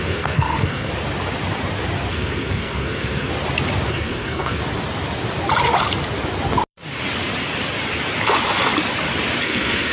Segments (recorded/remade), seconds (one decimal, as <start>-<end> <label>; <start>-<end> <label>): 0.0-0.9 remade; 0.9-2.1 recorded; 2.1-3.3 remade; 3.3-3.9 recorded; 3.9-4.6 remade; 4.6-9.4 recorded; 9.4-9.9 remade